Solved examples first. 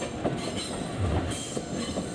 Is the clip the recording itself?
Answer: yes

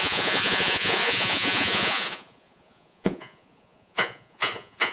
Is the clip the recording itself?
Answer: no